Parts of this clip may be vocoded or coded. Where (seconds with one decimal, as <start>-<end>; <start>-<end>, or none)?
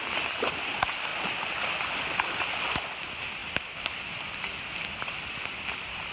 3.4-4.4